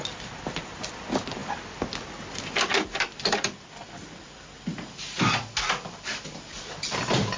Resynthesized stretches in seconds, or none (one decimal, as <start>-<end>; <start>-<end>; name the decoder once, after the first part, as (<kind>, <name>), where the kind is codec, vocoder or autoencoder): none